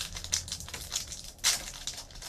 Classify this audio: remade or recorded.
recorded